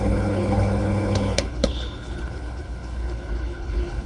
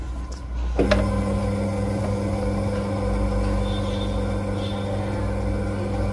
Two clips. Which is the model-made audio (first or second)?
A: first